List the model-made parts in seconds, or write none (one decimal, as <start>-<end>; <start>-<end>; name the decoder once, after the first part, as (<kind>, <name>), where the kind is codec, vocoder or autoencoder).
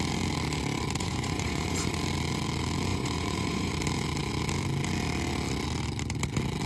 1.0-1.9 (vocoder, Vocos); 2.9-3.7